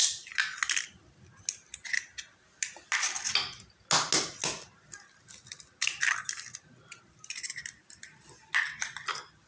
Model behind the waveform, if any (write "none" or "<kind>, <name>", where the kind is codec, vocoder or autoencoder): none